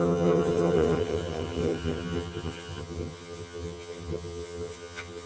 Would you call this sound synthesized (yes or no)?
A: yes